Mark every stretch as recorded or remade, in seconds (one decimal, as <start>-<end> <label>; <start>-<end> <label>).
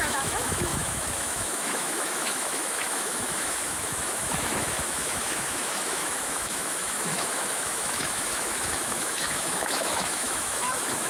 0.0-11.1 remade